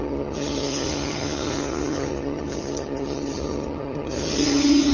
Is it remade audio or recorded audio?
remade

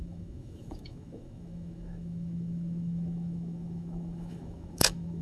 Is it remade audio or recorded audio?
remade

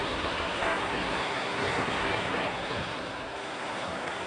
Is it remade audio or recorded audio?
remade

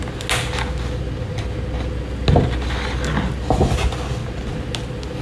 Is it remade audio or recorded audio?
recorded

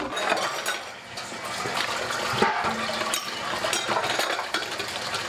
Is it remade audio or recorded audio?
recorded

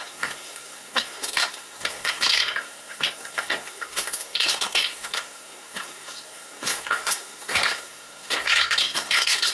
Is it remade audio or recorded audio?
remade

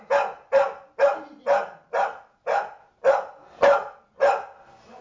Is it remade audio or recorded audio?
recorded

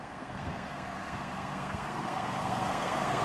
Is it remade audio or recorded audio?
remade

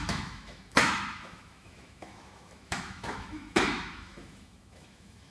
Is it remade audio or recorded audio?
remade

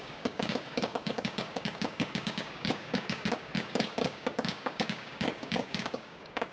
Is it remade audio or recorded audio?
remade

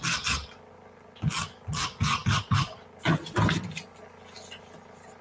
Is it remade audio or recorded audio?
recorded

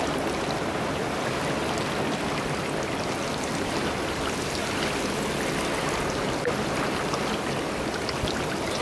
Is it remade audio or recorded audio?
recorded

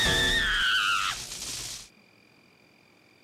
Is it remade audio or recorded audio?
recorded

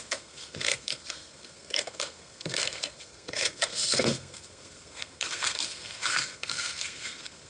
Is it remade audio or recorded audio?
remade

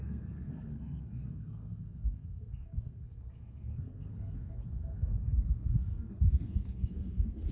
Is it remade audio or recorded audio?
remade